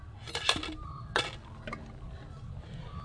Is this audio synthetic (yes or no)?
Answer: no